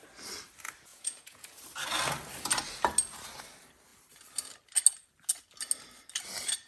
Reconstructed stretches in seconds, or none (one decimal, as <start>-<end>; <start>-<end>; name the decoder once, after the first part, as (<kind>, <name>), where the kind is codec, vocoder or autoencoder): 0.9-1.6 (vocoder, Vocos)